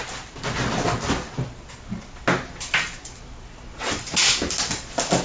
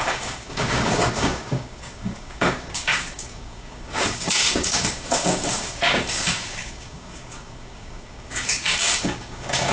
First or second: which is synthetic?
second